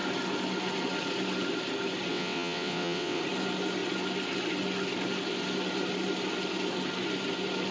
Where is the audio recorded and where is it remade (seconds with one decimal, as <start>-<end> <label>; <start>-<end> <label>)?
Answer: 0.0-2.1 recorded; 2.1-3.2 remade; 3.2-7.7 recorded